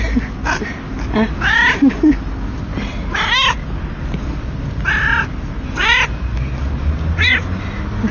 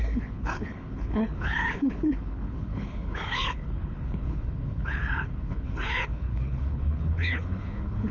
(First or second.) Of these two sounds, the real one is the first